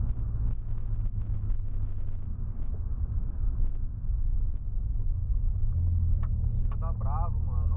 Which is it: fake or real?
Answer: real